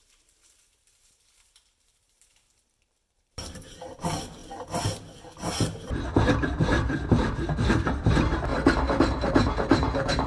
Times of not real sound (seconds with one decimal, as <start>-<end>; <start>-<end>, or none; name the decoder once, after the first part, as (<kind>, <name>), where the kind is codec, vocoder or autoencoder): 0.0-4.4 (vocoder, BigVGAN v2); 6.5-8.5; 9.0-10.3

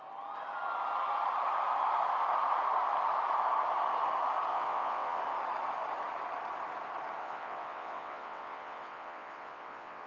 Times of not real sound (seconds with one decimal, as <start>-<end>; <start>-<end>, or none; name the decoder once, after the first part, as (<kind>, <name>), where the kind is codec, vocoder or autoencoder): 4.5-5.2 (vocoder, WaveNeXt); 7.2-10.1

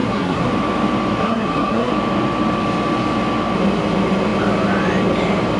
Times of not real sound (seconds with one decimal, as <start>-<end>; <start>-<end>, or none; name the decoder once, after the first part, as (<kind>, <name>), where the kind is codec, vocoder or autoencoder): 0.0-0.5 (codec, SNAC); 1.2-1.9